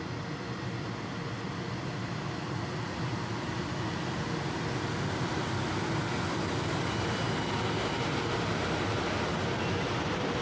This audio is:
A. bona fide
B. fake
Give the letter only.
A